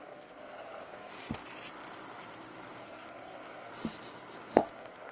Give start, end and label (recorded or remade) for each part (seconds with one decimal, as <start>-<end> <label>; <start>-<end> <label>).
0.0-1.1 remade; 1.1-2.8 recorded; 2.8-3.7 remade; 3.7-4.6 recorded; 4.6-5.1 remade